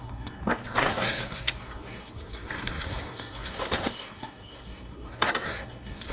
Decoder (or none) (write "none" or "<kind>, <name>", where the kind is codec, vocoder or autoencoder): codec, SNAC